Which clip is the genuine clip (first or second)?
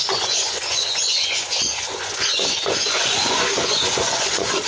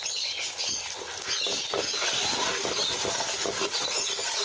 second